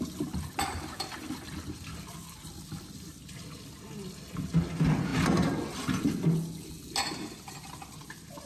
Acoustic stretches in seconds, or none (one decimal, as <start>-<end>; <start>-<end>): 0.0-8.5